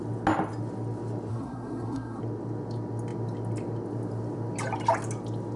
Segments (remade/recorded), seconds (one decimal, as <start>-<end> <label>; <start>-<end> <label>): 0.0-1.3 recorded; 1.3-2.2 remade; 2.2-5.6 recorded